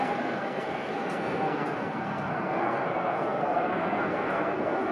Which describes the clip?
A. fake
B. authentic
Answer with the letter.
A